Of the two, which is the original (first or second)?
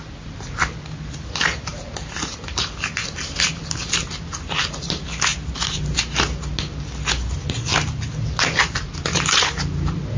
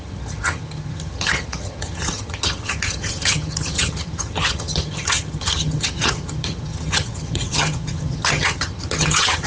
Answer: first